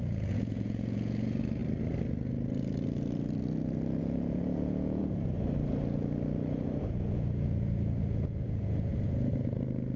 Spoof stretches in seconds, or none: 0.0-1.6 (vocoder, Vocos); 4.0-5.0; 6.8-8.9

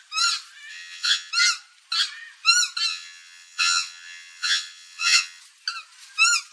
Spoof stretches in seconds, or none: 0.7-1.3 (vocoder, WaveNeXt); 2.9-5.4